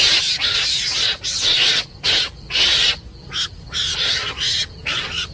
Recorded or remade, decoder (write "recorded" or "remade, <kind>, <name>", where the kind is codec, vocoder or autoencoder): recorded